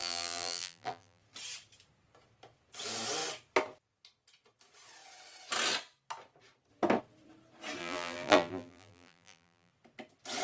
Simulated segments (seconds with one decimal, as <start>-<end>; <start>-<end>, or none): 0.0-1.2; 7.8-9.7